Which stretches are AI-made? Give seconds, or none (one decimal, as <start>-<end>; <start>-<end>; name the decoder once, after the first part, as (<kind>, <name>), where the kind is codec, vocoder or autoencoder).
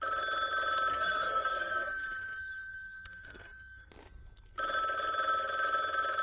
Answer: 0.9-3.9 (codec, SNAC)